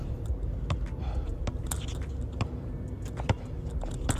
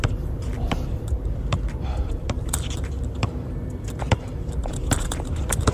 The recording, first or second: first